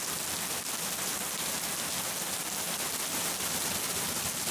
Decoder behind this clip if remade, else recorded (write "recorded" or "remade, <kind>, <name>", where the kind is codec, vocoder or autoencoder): recorded